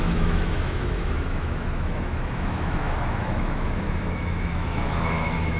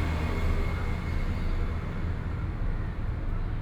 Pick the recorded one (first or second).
second